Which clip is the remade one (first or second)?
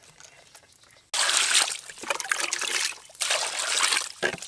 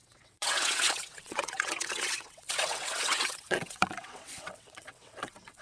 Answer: second